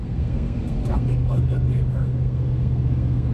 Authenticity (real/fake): fake